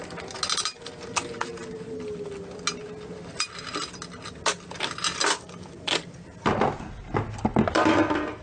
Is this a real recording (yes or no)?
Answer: yes